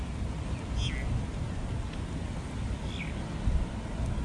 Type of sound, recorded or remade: recorded